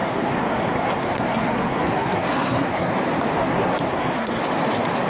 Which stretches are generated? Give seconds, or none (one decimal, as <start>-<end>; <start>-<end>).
0.0-2.9; 3.4-4.4